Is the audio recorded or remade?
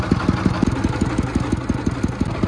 recorded